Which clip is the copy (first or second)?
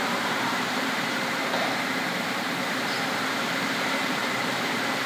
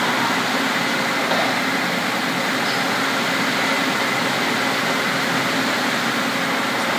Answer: first